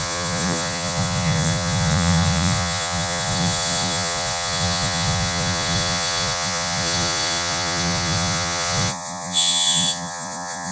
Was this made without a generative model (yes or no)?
no